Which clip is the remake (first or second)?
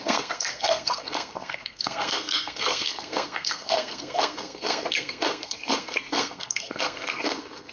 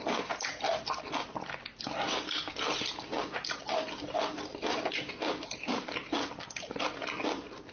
first